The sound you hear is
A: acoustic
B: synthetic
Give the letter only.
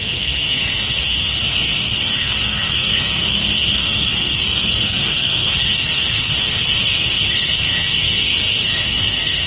B